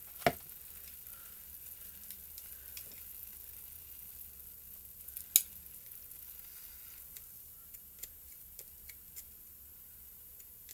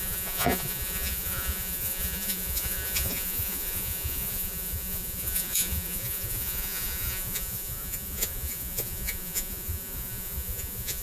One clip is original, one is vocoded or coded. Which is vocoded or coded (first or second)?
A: second